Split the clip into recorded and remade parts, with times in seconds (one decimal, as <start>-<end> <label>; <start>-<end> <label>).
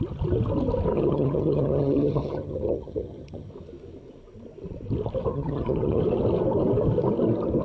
0.0-0.9 recorded; 0.9-3.5 remade; 3.5-5.3 recorded; 5.3-6.0 remade; 6.0-7.6 recorded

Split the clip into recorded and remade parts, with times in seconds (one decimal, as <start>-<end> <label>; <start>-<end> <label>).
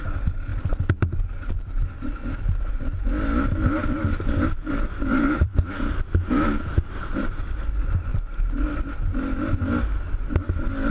0.0-0.5 remade; 0.5-4.7 recorded; 4.7-5.5 remade; 5.5-7.0 recorded; 7.0-8.1 remade; 8.1-10.9 recorded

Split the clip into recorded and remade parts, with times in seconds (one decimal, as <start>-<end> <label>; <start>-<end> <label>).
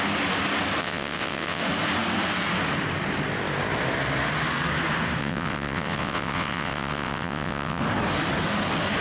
0.0-0.8 recorded; 0.8-1.6 remade; 1.6-5.2 recorded; 5.2-7.8 remade; 7.8-9.0 recorded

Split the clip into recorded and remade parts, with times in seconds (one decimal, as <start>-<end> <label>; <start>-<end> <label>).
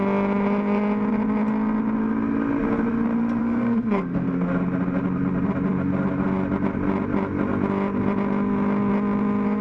0.0-3.4 recorded; 3.4-4.5 remade; 4.5-9.6 recorded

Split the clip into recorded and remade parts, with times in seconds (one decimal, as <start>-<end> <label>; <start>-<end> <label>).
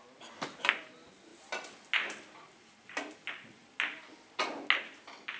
0.0-5.4 recorded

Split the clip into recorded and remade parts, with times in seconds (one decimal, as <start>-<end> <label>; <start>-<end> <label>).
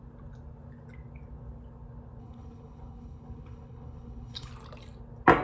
0.0-2.2 recorded; 2.2-4.5 remade; 4.5-5.4 recorded